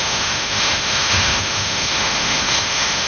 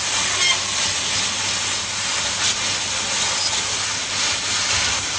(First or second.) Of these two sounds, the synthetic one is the first